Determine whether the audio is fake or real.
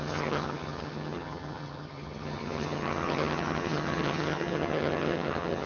fake